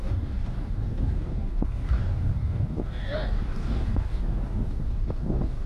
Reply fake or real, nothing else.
fake